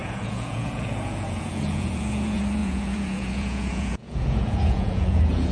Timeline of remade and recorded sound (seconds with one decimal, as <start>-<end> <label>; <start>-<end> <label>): 0.0-5.5 remade